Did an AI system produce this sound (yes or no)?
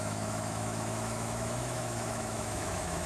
yes